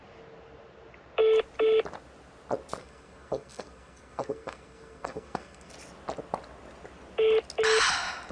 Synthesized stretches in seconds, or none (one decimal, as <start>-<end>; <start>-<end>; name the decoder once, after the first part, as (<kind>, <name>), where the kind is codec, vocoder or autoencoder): 2.8-5.7 (codec, SNAC)